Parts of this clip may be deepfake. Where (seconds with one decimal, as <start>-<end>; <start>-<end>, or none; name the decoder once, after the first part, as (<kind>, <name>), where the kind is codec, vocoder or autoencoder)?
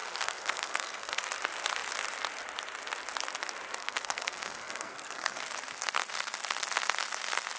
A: 0.0-1.2 (codec, SNAC); 3.8-5.4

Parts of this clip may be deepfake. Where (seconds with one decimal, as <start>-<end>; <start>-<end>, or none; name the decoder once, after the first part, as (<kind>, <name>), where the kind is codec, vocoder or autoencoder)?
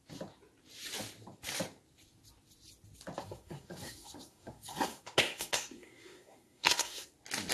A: 3.2-7.1 (codec, SNAC)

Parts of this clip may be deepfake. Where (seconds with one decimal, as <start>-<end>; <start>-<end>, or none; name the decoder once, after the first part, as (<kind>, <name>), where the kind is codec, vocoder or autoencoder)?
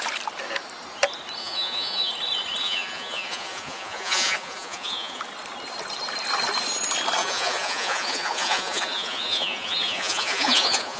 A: 1.4-2.1 (vocoder, Vocos); 2.6-5.2; 7.2-11.0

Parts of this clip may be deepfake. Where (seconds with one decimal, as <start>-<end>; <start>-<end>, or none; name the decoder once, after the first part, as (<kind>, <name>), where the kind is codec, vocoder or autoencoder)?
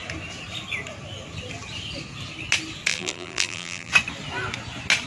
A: 2.9-3.9 (vocoder, BigVGAN v2)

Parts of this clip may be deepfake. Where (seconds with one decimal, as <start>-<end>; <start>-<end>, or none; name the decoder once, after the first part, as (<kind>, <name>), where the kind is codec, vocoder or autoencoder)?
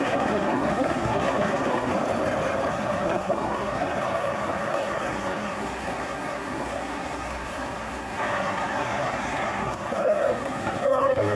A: 0.0-1.9 (codec, SNAC); 2.7-11.4